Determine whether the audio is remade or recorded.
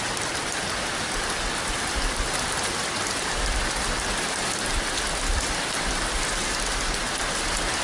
recorded